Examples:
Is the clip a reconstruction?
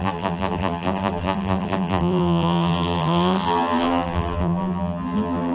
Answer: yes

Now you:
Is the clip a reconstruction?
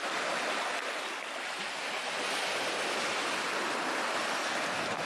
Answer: no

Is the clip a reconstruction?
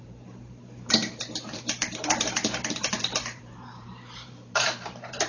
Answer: yes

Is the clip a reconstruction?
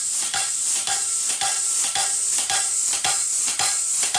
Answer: yes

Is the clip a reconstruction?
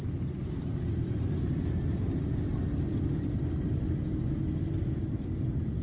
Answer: yes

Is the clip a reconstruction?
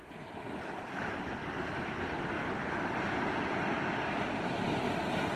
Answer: no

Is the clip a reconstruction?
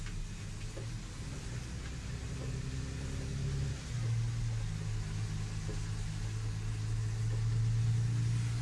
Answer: no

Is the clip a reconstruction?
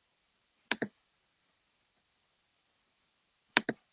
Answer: yes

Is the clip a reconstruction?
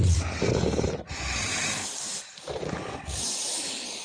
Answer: no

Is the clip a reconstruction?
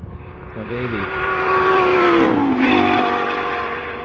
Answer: yes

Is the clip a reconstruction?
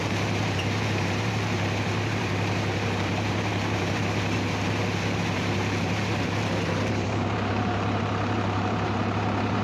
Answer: yes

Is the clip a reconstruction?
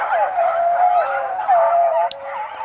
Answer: no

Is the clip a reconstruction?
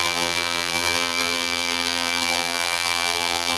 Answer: yes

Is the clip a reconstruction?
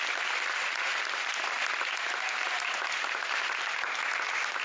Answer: no